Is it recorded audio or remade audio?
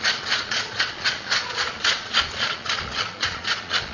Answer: remade